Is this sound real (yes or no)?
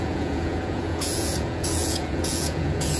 no